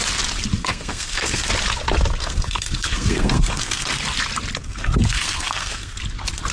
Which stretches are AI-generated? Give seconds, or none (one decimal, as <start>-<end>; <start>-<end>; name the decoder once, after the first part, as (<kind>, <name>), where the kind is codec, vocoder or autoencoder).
0.6-1.5 (codec, SNAC); 2.2-4.0; 4.6-6.0